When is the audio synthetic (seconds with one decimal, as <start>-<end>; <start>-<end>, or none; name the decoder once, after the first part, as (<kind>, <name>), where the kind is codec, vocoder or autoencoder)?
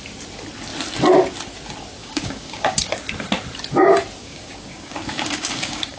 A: 2.0-2.8 (codec, DAC); 4.2-6.0